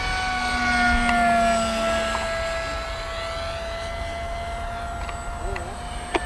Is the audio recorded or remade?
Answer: recorded